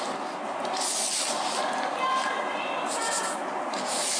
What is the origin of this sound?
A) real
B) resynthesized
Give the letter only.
A